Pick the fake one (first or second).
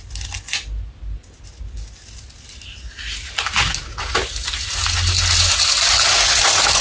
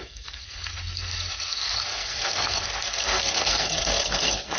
second